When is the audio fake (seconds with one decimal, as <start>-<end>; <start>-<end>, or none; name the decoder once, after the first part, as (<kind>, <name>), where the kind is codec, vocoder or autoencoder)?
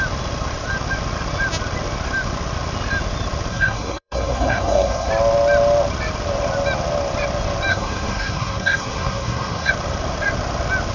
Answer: 3.5-5.1 (codec, SNAC); 7.7-9.7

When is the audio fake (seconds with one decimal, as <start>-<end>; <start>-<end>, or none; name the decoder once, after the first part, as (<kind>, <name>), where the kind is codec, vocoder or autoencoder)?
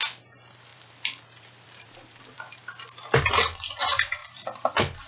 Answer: 0.7-3.8 (vocoder, BigVGAN v2); 4.2-5.1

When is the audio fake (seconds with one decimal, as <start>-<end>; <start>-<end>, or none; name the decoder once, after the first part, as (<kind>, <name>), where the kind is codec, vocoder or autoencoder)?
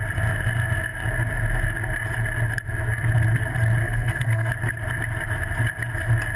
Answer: 3.8-4.5 (codec, SNAC)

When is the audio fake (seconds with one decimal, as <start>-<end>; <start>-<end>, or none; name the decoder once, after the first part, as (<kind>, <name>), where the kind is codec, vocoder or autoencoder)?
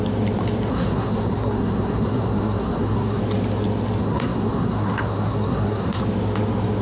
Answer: 0.7-3.2 (codec, SNAC); 4.0-6.0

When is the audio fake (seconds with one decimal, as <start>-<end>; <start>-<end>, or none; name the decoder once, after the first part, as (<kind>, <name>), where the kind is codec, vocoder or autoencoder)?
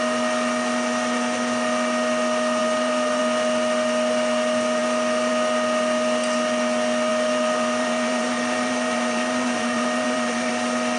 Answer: 2.6-3.2 (vocoder, BigVGAN v2); 7.1-10.5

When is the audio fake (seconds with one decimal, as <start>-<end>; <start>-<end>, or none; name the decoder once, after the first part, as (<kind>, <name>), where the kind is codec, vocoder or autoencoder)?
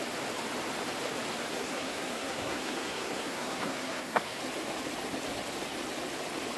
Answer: 1.5-4.4 (codec, SNAC)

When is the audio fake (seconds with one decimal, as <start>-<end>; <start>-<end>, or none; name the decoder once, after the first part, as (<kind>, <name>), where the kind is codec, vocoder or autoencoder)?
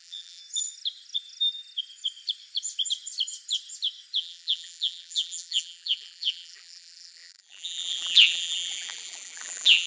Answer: 0.0-0.4 (vocoder, BigVGAN v2); 4.2-9.9